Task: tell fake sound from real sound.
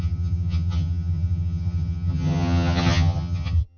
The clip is fake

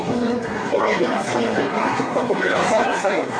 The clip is fake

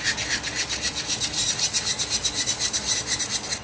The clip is real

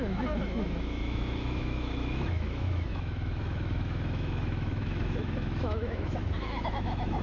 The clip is fake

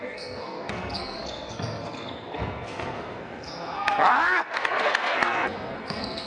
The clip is fake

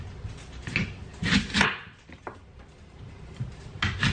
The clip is real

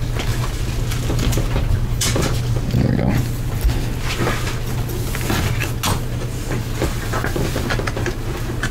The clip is real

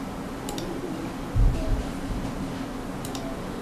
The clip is real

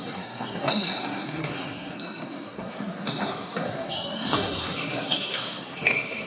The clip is fake